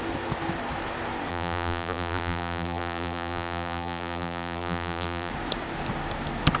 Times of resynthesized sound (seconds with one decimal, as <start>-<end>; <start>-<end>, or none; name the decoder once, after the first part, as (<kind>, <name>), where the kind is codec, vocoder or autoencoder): 1.3-5.3 (vocoder, BigVGAN v2)